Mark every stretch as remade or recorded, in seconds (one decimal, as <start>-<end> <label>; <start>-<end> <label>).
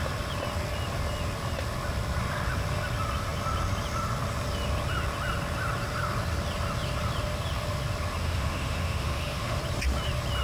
0.0-8.2 recorded; 8.2-9.6 remade; 9.6-10.4 recorded